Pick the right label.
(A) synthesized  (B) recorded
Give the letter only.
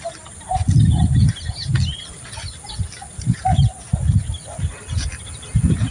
B